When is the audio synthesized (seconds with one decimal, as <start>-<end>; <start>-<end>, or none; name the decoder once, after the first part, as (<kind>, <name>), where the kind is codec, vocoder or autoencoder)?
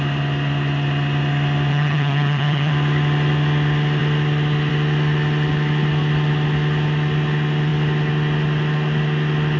1.7-2.7 (vocoder, HiFi-GAN)